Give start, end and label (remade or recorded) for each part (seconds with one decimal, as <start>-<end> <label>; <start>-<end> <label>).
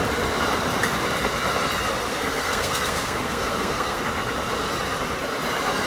0.0-2.1 recorded; 2.1-4.0 remade; 4.0-5.9 recorded